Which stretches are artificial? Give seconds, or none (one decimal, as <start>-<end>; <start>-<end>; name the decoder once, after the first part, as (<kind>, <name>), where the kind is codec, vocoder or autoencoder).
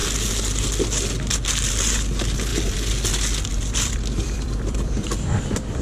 3.5-5.8 (vocoder, BigVGAN v2)